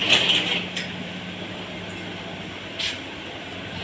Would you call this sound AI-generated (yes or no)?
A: no